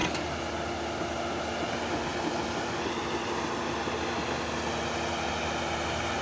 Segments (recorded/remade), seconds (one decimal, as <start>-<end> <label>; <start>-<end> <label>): 0.0-6.2 recorded